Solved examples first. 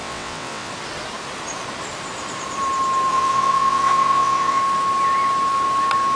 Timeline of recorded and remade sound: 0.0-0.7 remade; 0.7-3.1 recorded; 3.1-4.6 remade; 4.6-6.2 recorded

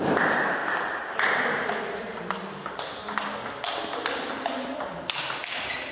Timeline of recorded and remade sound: 0.0-5.9 recorded

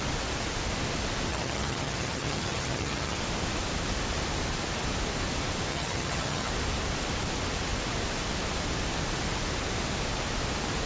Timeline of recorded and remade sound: 0.0-1.3 recorded; 1.3-3.2 remade; 3.2-5.7 recorded; 5.7-6.5 remade; 6.5-10.9 recorded

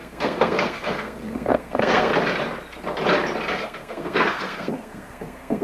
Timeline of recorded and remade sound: 0.0-2.1 remade; 2.1-3.5 recorded; 3.5-5.6 remade

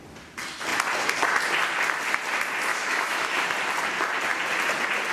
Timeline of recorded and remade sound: 0.0-2.7 recorded; 2.7-3.5 remade; 3.5-5.1 recorded

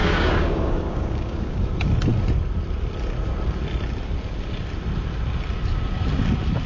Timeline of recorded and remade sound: 0.0-1.6 remade; 1.6-6.7 recorded

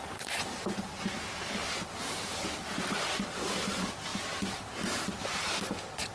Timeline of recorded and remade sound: 0.0-6.1 recorded

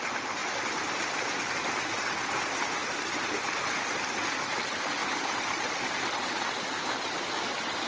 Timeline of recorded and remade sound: 0.0-7.9 recorded